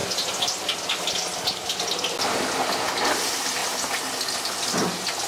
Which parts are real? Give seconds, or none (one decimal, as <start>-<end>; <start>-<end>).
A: 0.0-5.3